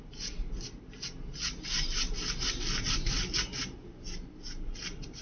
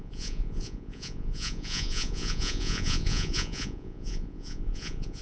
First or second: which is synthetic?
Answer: second